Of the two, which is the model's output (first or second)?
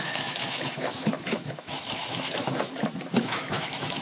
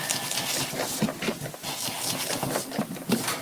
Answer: first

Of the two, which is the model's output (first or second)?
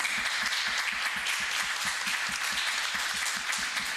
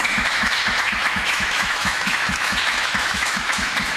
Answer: second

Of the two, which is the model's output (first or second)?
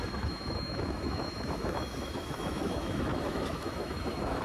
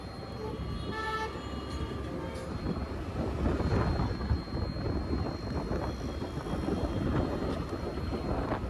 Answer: first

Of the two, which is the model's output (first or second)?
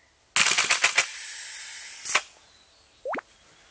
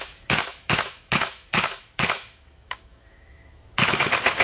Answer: second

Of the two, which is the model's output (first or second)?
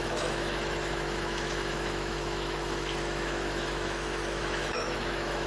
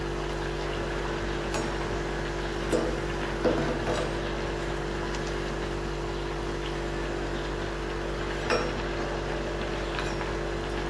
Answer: first